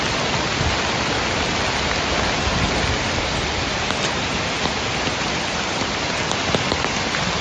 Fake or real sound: real